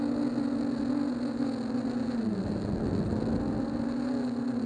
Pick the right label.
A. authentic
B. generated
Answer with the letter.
A